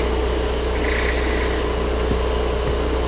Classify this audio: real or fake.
real